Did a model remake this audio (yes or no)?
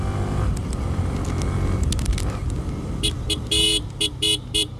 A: no